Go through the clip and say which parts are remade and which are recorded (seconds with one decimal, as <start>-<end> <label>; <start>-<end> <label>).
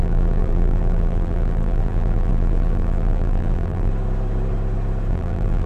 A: 0.0-3.9 remade; 3.9-5.1 recorded; 5.1-5.7 remade